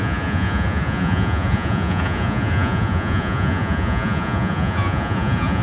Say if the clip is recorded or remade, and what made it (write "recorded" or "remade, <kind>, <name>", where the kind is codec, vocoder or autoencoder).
remade, vocoder, Vocos